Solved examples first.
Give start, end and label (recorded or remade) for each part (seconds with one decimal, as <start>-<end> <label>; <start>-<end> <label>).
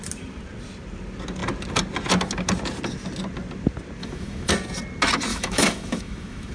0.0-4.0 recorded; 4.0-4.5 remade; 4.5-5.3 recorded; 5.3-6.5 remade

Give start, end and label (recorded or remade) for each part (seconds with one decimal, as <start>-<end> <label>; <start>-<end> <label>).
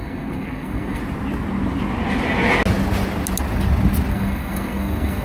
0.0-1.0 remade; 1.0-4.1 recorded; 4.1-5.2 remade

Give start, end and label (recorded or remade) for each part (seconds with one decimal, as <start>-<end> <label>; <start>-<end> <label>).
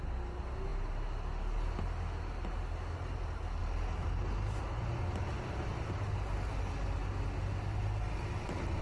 0.0-8.8 recorded